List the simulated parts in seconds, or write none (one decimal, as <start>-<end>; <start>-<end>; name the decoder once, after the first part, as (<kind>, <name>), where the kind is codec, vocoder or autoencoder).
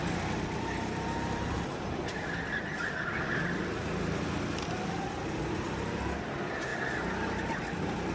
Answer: none